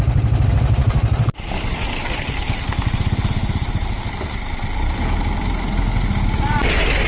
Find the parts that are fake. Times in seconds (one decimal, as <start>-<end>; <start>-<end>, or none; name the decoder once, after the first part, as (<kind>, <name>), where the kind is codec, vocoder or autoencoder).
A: 3.4-4.0 (vocoder, BigVGAN v2)